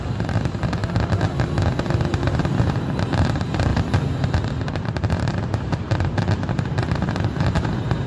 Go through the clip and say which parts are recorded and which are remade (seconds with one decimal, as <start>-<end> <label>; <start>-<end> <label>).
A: 0.0-0.8 remade; 0.8-2.4 recorded; 2.4-3.7 remade; 3.7-4.6 recorded; 4.6-8.1 remade